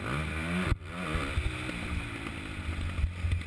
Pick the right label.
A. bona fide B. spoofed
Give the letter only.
A